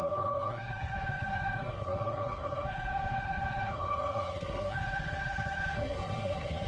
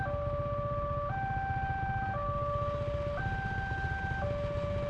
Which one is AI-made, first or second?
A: first